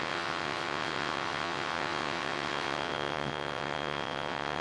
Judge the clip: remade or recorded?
remade